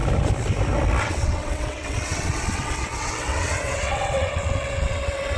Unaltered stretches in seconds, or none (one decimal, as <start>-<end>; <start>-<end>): 0.0-1.0